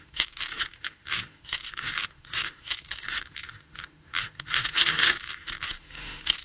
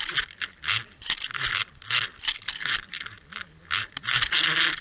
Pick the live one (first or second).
second